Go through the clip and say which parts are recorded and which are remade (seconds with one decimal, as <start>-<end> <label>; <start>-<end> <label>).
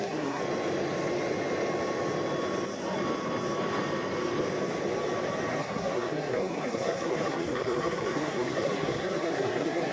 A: 0.0-0.4 remade; 0.4-5.6 recorded; 5.6-9.9 remade